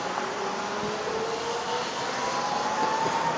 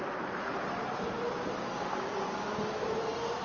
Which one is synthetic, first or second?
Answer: second